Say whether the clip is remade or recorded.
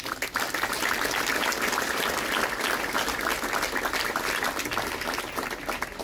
recorded